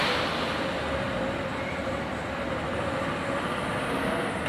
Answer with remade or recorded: recorded